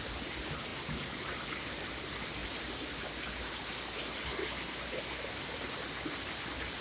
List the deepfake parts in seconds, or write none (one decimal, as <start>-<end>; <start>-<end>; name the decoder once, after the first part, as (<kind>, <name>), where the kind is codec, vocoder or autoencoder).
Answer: 0.7-1.7 (vocoder, BigVGAN v2)